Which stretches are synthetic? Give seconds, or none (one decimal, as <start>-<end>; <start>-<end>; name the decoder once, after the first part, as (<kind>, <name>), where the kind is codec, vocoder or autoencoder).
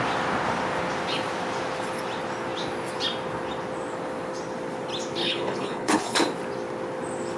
5.2-6.2 (codec, HILCodec)